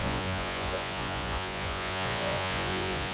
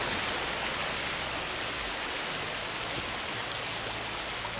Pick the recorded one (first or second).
second